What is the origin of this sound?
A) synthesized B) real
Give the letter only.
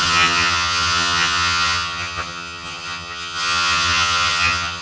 A